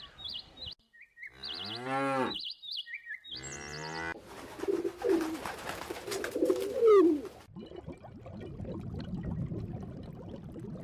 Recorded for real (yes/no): yes